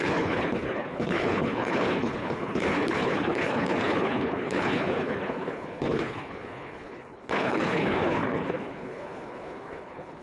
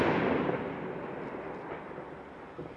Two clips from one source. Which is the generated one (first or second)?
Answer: first